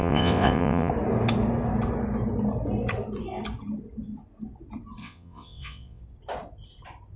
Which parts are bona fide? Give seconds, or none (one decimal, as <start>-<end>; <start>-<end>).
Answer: 0.9-5.0; 6.0-7.2